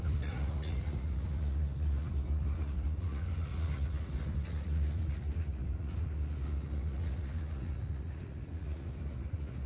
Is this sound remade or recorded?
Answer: remade